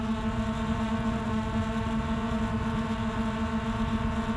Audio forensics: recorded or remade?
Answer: recorded